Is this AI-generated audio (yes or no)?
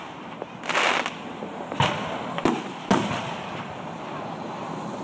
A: no